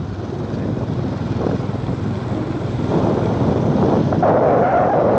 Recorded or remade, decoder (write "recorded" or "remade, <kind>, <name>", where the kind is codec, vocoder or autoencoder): recorded